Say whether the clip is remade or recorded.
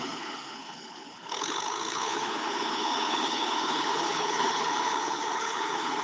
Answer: remade